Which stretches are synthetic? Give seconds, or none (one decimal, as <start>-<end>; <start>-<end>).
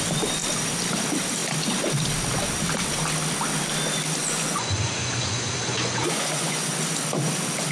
4.2-6.7